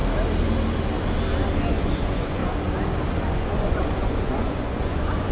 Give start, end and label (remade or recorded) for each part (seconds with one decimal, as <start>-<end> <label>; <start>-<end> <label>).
0.0-1.7 recorded; 1.7-2.4 remade; 2.4-3.3 recorded; 3.3-5.3 remade